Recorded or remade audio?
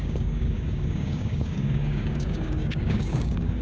remade